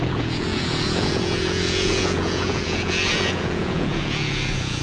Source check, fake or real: fake